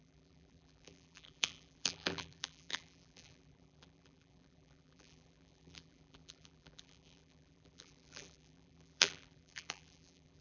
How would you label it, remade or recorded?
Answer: remade